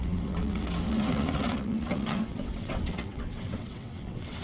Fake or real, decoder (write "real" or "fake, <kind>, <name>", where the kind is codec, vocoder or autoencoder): fake, vocoder, WaveNeXt